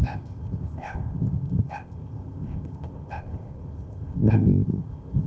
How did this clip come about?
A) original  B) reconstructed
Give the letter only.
B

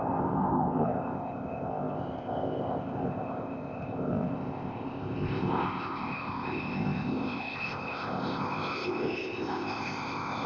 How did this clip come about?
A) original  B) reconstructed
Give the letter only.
B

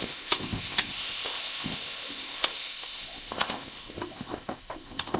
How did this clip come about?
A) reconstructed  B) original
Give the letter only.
A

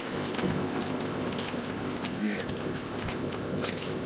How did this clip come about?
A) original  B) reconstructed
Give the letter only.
B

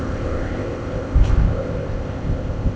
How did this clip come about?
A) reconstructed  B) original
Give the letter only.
A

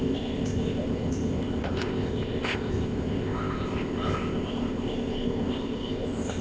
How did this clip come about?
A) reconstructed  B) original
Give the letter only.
A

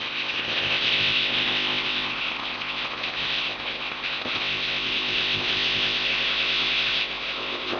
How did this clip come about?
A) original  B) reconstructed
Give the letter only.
B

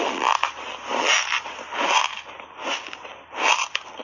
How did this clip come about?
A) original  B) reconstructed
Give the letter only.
A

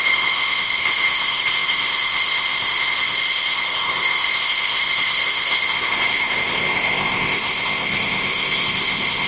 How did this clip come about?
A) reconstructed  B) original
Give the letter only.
A